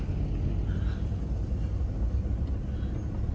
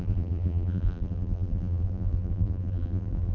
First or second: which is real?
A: first